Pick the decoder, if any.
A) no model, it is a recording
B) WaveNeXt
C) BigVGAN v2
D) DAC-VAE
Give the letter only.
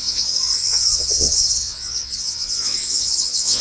B